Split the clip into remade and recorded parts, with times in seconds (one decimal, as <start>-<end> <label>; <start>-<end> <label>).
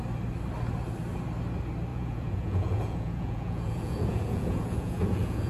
0.0-1.9 recorded; 1.9-5.5 remade